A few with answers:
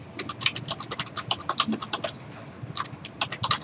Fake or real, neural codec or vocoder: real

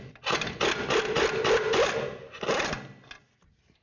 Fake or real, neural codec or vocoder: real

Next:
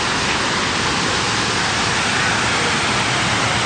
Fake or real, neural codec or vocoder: real